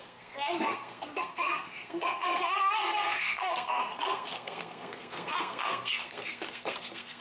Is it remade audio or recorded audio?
remade